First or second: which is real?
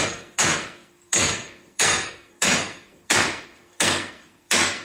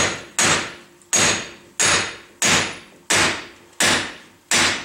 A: second